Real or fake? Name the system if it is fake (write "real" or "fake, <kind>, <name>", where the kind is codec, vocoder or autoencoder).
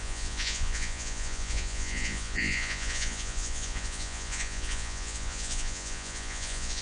fake, vocoder, Vocos